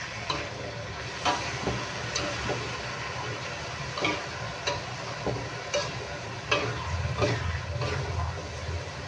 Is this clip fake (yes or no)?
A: no